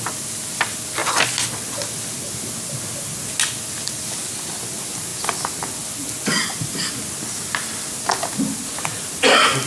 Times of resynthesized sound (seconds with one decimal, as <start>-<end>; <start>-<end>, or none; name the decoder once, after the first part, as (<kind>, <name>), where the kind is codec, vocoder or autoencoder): none